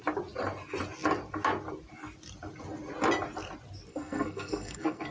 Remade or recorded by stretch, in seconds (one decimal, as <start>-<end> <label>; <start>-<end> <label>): 0.0-3.9 recorded; 3.9-5.1 remade